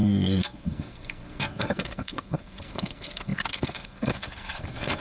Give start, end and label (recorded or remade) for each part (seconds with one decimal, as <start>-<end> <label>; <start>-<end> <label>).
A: 0.0-5.0 remade